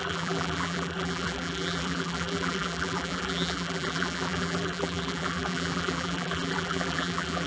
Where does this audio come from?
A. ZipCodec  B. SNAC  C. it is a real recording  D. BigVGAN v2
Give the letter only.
D